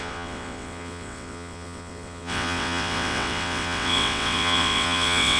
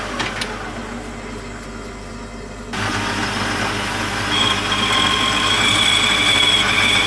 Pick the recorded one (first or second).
second